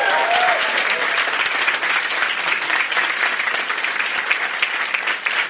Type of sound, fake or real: real